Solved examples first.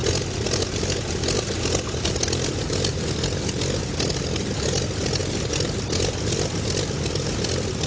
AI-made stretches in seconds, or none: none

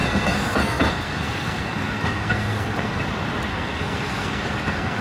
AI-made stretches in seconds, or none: 0.0-3.0; 3.5-5.0

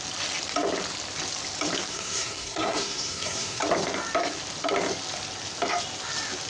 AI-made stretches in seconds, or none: 1.9-3.6

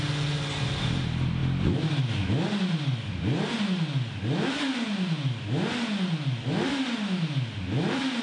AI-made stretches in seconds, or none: none

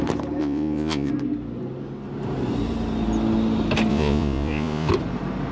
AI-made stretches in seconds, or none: 0.4-1.1; 3.9-4.9